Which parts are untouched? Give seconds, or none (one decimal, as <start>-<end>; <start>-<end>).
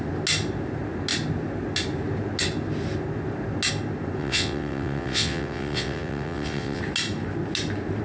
0.0-4.2; 6.8-8.0